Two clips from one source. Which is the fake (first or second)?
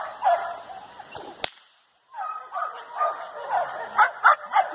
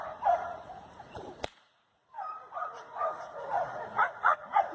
second